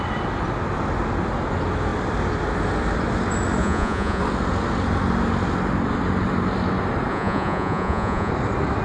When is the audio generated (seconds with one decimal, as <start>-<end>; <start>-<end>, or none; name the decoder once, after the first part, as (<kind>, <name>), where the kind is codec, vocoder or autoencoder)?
3.6-4.2 (vocoder, Vocos); 7.1-8.3